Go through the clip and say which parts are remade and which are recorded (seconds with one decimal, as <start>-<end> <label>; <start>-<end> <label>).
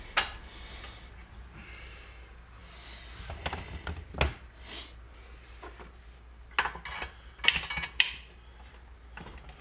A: 0.0-9.6 recorded